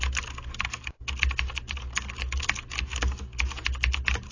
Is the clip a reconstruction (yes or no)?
no